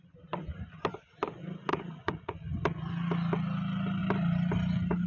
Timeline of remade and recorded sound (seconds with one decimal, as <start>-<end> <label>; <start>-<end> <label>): 0.0-1.7 recorded; 1.7-2.3 remade; 2.3-5.1 recorded